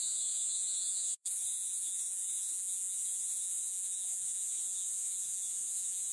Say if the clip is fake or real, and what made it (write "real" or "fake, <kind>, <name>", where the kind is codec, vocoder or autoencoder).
fake, vocoder, Vocos